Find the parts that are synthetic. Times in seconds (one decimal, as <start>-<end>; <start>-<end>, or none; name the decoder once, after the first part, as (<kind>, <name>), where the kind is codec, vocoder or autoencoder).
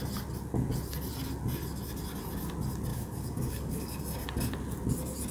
2.9-4.0 (codec, DAC)